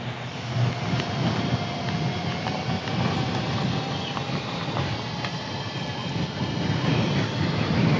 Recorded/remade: recorded